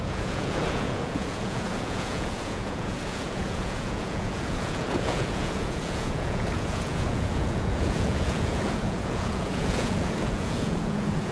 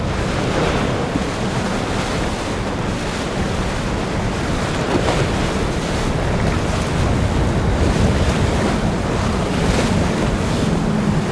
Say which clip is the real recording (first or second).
second